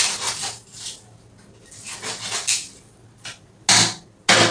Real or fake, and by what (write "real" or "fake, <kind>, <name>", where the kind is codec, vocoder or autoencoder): real